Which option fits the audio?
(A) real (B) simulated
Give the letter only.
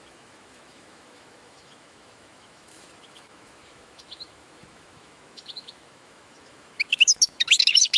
B